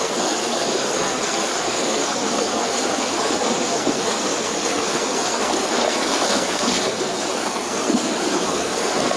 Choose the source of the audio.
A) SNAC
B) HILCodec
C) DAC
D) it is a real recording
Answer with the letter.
A